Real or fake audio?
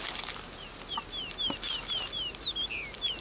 real